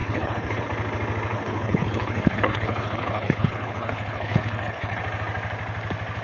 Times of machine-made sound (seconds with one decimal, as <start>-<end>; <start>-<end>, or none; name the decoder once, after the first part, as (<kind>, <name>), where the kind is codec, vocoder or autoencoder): 0.0-0.6 (codec, HILCodec); 1.3-5.0